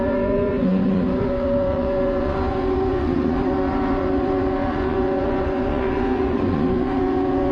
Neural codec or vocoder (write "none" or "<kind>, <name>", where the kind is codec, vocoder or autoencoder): vocoder, Vocos